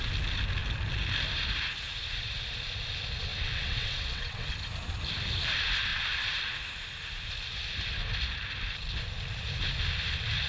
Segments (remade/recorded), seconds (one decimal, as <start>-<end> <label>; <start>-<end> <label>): 0.0-3.3 recorded; 3.3-4.5 remade; 4.5-10.5 recorded